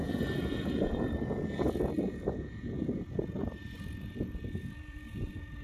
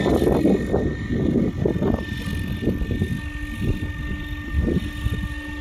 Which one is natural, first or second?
second